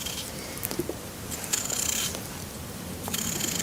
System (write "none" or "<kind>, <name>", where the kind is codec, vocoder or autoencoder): vocoder, BigVGAN v2